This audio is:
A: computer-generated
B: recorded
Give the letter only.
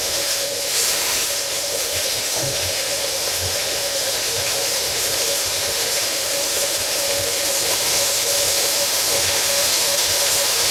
A